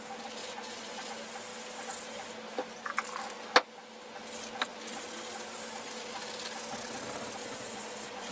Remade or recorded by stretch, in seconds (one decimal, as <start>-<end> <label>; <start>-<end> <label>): 0.0-0.4 recorded; 0.4-1.1 remade; 1.1-7.4 recorded; 7.4-8.3 remade